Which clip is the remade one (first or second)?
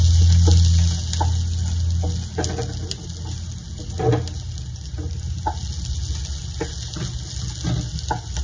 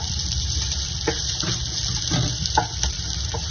second